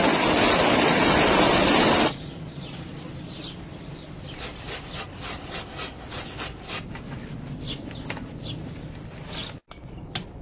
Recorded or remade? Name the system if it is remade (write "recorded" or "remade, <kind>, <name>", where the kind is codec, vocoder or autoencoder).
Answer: recorded